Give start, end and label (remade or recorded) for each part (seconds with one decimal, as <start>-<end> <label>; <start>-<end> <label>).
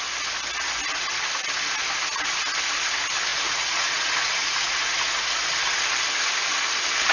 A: 0.0-3.3 recorded; 3.3-5.8 remade; 5.8-7.1 recorded